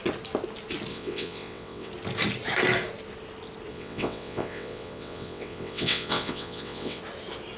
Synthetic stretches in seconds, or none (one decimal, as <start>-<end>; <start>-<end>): 0.9-1.9; 3.7-7.0